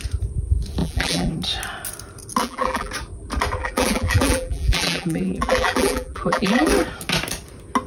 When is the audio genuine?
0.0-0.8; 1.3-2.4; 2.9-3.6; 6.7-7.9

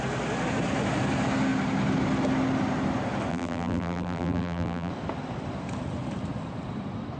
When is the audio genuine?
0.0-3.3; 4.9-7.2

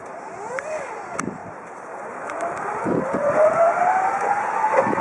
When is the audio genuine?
0.0-1.4; 4.4-5.0

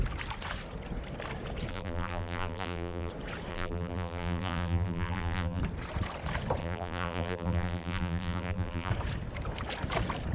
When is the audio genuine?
0.0-1.7; 3.1-3.5; 5.6-6.6; 8.9-10.3